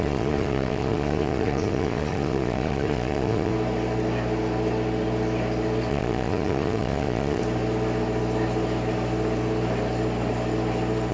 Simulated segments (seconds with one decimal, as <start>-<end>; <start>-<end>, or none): 0.0-3.5; 5.9-7.4